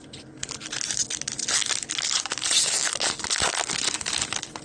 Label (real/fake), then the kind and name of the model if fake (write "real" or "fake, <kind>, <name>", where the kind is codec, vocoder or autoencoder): real